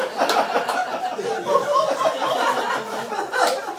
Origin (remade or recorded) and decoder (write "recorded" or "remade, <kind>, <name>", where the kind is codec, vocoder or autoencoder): recorded